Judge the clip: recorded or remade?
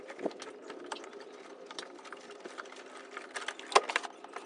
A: recorded